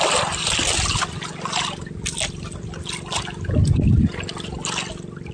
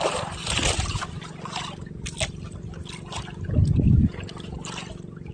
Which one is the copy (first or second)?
second